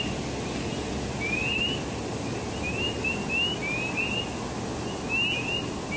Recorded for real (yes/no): yes